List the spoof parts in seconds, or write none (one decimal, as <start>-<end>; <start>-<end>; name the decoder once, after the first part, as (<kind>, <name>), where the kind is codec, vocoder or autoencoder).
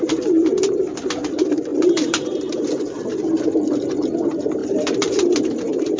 1.7-2.6 (vocoder, BigVGAN v2)